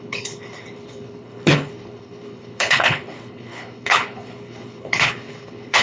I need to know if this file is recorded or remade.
remade